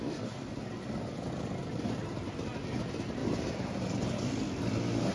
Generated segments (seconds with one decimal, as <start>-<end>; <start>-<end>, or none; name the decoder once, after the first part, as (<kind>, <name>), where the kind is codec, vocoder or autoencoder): 1.6-2.2 (vocoder, BigVGAN v2); 3.2-4.4